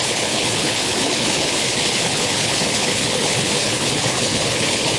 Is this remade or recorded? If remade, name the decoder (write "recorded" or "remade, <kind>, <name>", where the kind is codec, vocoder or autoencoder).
remade, codec, HILCodec